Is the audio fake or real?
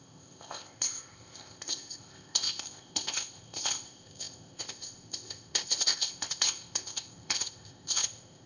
fake